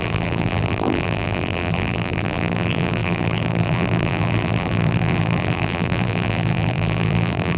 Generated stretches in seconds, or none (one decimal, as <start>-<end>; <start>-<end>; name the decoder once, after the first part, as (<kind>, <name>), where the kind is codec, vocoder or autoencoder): 0.0-7.6 (vocoder, BigVGAN v2)